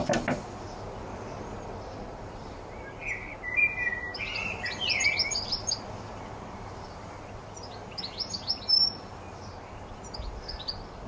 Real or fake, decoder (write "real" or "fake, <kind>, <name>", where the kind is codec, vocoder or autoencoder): real